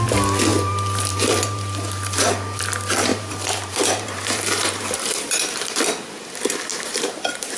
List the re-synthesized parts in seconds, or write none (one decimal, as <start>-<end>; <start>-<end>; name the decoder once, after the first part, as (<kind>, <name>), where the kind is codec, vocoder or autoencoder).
0.5-2.6 (vocoder, BigVGAN v2); 3.1-5.8; 6.7-7.6